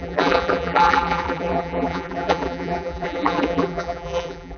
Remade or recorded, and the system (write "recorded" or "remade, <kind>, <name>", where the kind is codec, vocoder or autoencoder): remade, vocoder, BigVGAN v2